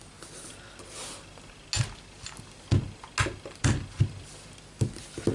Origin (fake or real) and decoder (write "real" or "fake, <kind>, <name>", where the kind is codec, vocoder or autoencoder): real